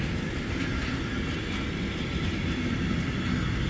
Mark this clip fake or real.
real